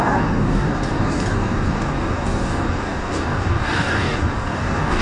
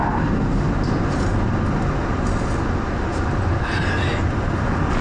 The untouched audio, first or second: second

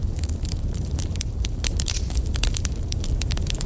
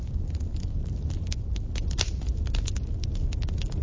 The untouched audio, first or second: second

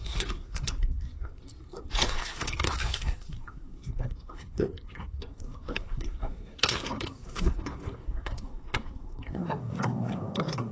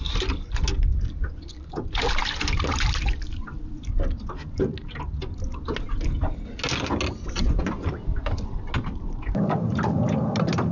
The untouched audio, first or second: second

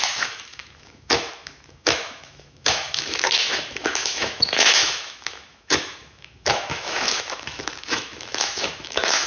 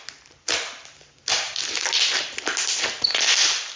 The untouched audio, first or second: second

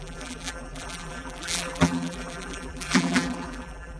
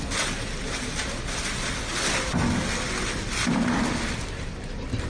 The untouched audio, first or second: second